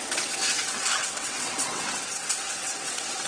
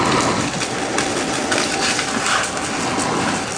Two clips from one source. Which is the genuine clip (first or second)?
second